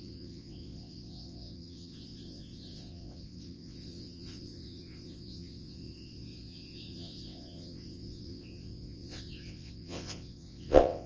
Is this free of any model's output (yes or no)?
no